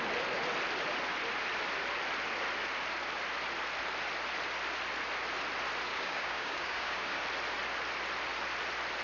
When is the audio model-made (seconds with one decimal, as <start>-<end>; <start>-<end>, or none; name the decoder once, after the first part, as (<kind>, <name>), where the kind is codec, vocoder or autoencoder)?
5.9-7.2 (codec, DAC)